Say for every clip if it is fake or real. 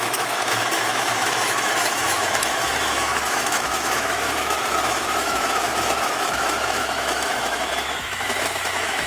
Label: fake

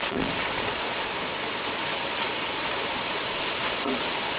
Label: fake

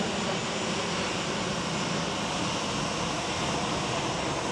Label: real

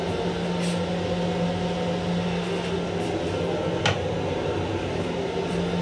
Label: real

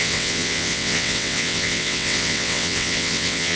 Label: fake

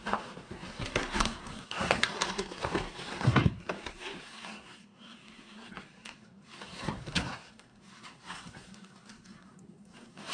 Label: fake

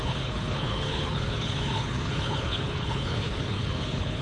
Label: fake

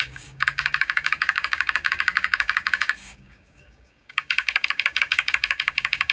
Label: fake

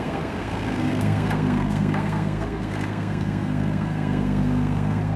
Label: fake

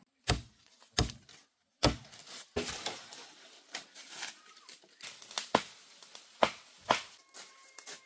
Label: real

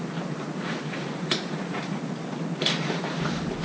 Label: real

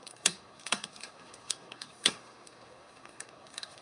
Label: fake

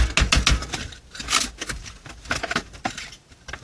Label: real